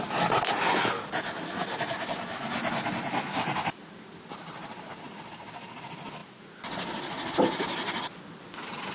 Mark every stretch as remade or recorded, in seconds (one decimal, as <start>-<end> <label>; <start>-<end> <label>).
0.0-8.9 recorded